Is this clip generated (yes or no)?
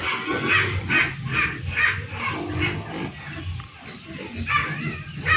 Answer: no